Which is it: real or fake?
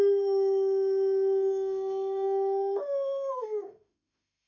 fake